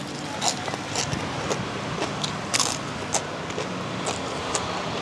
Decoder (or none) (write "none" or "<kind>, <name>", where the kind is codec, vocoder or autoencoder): none